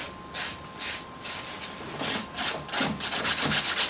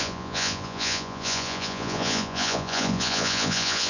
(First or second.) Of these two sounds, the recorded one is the first